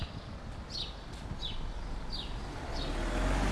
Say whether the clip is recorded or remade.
recorded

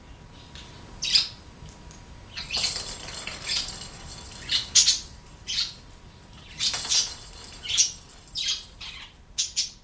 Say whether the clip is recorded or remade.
recorded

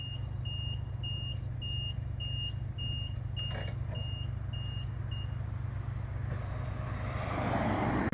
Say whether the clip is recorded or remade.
recorded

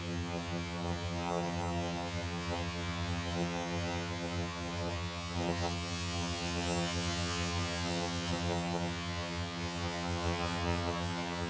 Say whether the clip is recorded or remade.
remade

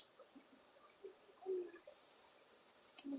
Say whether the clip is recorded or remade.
recorded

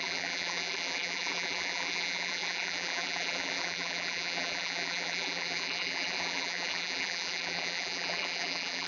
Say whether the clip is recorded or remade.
remade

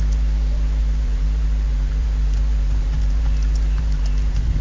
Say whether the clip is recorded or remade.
remade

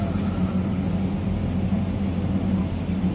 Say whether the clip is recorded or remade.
recorded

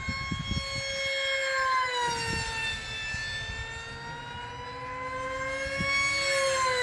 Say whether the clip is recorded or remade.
recorded